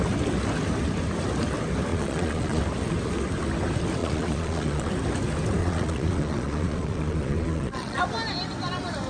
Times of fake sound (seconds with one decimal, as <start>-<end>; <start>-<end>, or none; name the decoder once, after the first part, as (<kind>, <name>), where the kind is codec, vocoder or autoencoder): 1.9-2.6 (vocoder, Vocos); 4.0-4.9; 5.6-8.0